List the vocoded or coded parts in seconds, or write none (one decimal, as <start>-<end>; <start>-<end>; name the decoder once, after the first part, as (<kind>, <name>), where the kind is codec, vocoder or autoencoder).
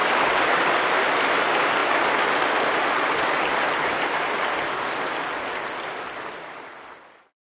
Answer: none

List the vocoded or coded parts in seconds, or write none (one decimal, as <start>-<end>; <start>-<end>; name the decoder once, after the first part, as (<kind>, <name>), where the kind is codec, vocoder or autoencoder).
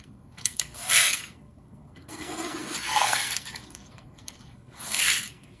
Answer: 0.0-5.6 (codec, SNAC)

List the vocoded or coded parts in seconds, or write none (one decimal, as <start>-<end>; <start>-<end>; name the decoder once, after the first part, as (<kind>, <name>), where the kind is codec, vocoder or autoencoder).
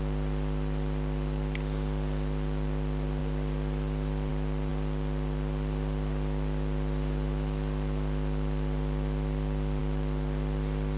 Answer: none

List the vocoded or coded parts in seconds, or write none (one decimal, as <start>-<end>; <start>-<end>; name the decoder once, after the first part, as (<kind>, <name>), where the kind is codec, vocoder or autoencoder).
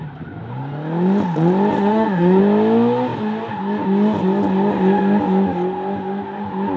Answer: 1.8-2.4 (autoencoder, DAC-VAE)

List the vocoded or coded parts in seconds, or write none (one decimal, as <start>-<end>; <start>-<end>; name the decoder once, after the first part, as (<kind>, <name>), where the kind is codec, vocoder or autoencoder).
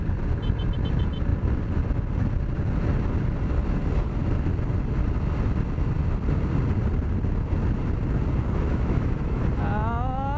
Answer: 8.7-9.4 (autoencoder, DAC-VAE)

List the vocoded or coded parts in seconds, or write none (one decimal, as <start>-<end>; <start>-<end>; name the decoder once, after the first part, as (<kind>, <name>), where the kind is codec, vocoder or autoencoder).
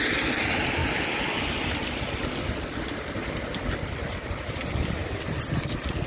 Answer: none